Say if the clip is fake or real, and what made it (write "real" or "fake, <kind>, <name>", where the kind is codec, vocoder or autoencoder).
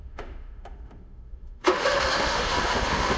fake, autoencoder, DAC-VAE